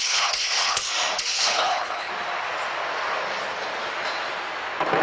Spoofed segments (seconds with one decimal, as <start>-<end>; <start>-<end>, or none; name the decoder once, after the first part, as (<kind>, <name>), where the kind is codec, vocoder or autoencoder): 0.0-0.9 (codec, HILCodec); 1.3-2.1